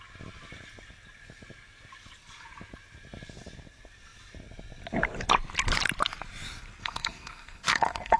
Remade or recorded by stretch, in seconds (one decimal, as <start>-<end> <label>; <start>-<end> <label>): 0.0-6.8 recorded; 6.8-8.2 remade